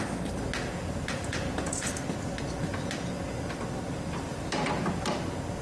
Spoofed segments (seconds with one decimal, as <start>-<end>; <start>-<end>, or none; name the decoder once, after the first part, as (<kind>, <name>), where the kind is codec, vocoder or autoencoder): 0.6-1.9 (vocoder, Vocos)